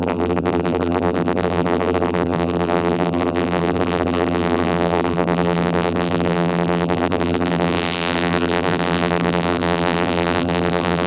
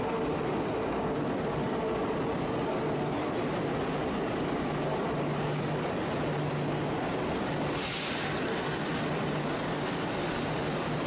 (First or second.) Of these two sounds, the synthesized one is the first